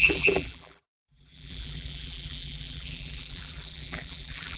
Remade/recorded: remade